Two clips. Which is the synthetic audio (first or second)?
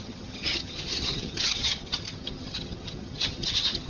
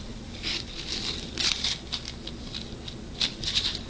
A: first